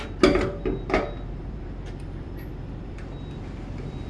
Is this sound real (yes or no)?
yes